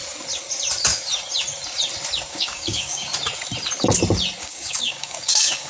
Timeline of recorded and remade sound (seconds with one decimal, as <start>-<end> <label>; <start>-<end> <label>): 0.0-2.3 recorded; 2.3-3.1 remade; 3.1-4.4 recorded; 4.4-5.7 remade